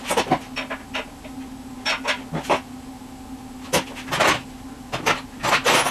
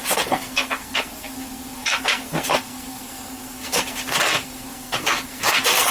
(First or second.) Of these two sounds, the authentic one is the first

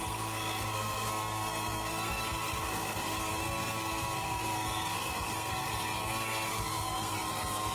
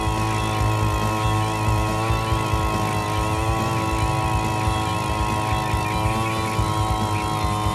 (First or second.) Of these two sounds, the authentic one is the second